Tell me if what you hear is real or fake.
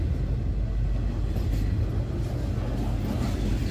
real